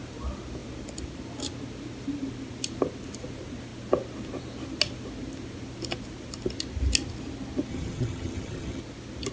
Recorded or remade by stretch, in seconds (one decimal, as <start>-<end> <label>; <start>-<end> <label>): 0.0-7.7 recorded; 7.7-8.8 remade; 8.8-9.3 recorded